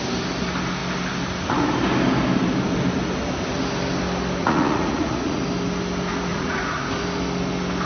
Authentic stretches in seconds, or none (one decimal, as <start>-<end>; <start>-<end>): 0.0-4.4; 5.4-6.3; 6.8-7.9